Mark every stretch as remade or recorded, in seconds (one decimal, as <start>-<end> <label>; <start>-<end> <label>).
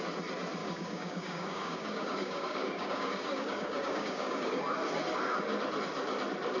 0.0-0.6 recorded; 0.6-4.6 remade; 4.6-6.6 recorded